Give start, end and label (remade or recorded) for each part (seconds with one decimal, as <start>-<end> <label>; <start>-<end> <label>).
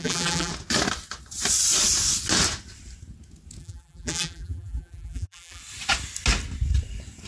0.0-0.5 remade; 0.5-3.6 recorded; 3.6-5.6 remade; 5.6-7.3 recorded